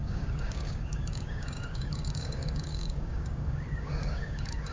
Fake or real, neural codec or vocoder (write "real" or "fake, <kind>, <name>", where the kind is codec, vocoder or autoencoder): fake, codec, DAC